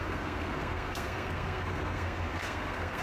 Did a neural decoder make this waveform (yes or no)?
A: yes